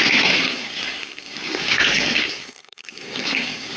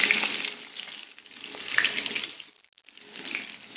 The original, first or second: second